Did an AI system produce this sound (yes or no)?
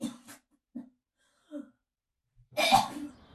yes